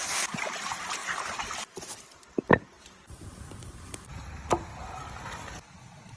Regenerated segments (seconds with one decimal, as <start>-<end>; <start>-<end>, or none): none

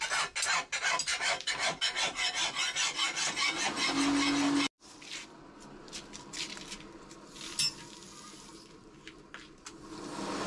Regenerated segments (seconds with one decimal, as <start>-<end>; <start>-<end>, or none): 1.1-1.8

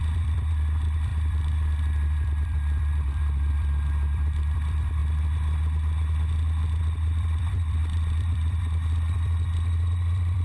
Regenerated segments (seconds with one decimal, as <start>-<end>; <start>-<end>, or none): 0.0-5.0; 6.8-10.4

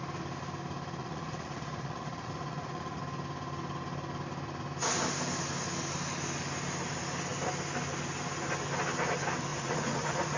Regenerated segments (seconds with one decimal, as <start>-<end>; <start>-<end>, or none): 1.0-3.0; 9.5-10.4

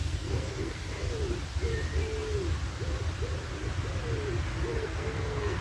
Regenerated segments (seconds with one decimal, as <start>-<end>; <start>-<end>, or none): 0.0-1.1; 4.7-5.6

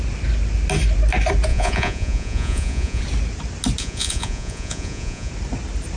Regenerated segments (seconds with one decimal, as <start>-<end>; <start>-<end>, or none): 1.5-3.0; 3.8-5.3